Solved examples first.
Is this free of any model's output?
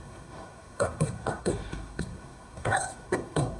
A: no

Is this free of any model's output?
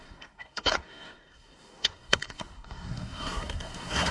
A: no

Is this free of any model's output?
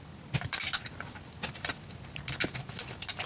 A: yes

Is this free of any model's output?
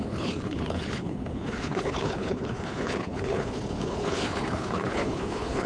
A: no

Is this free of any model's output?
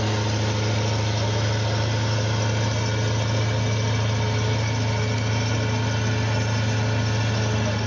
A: yes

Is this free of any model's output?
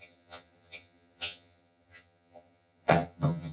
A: no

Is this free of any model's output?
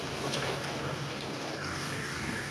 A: no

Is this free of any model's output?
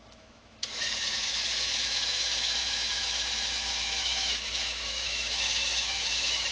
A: no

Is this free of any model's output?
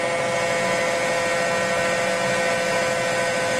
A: yes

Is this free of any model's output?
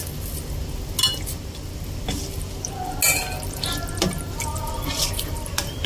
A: yes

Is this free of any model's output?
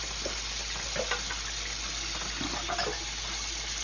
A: yes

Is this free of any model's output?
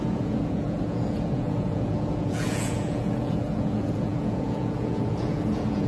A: no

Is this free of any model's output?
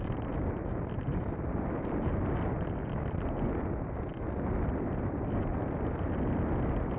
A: yes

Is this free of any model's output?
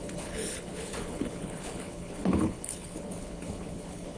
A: no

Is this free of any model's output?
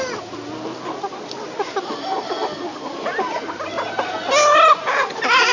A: yes